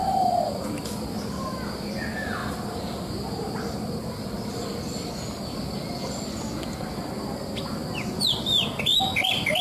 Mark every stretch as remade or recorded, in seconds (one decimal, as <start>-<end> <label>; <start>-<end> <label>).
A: 0.0-1.2 remade; 1.2-2.4 recorded; 2.4-5.1 remade; 5.1-9.6 recorded